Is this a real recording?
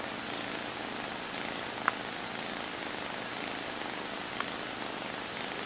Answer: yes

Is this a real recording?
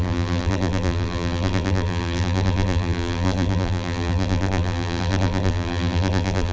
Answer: no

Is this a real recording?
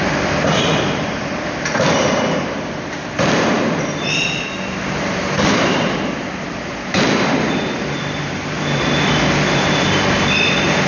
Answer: no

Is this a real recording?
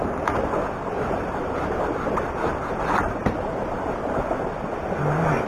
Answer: yes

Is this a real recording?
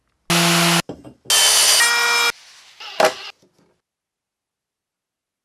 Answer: yes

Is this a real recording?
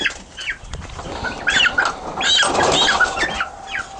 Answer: yes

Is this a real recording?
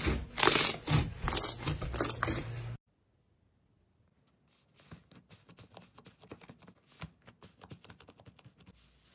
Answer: yes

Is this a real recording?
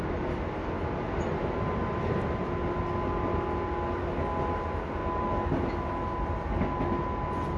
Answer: yes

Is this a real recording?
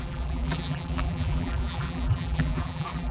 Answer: no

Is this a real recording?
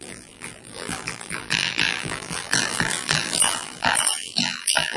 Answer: no